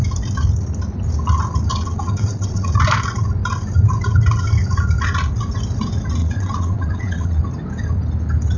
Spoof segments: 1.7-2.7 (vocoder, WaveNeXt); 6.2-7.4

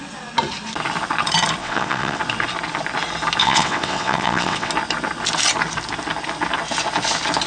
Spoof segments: 1.6-2.2 (vocoder, WaveNeXt); 3.4-4.7

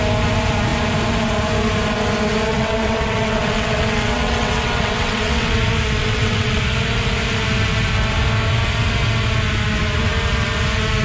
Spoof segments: 2.5-5.5 (vocoder, WaveNeXt); 6.0-6.6

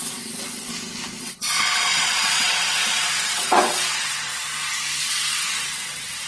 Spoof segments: 0.0-0.7 (vocoder, WaveNeXt); 1.2-4.3; 5.0-6.3

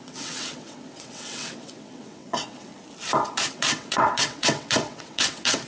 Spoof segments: 0.0-2.7 (vocoder, WaveNeXt); 3.5-5.7